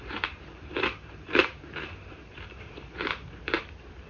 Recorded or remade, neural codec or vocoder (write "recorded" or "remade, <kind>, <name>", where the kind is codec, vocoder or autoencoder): remade, vocoder, BigVGAN v2